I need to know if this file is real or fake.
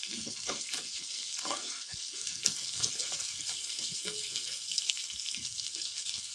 fake